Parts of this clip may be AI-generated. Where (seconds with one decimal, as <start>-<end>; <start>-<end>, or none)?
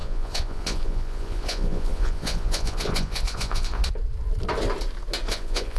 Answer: 0.0-3.8; 5.3-5.8